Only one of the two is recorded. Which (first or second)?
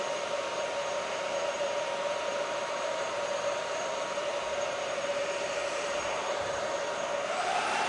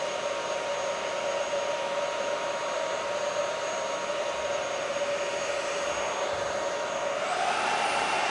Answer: second